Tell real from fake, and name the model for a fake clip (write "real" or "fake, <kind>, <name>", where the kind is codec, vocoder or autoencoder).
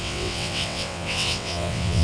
fake, vocoder, WaveNeXt